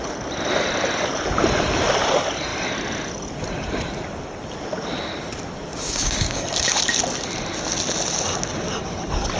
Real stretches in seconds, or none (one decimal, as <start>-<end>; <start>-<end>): 0.0-5.7; 6.4-9.4